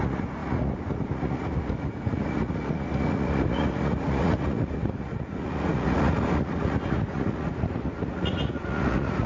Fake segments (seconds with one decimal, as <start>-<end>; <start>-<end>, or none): 0.0-9.3